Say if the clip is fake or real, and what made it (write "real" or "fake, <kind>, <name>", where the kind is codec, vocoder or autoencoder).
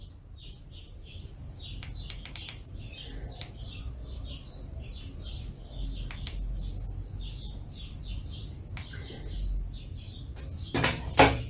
real